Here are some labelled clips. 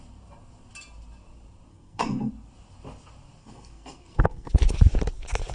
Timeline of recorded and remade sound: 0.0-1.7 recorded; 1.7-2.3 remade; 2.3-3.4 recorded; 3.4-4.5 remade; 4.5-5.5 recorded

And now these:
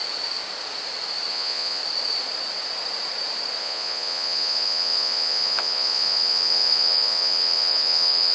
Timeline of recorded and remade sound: 0.0-1.3 recorded; 1.3-1.8 remade; 1.8-3.6 recorded; 3.6-8.3 remade

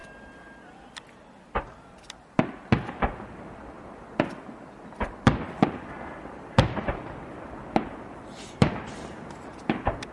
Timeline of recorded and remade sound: 0.0-10.1 recorded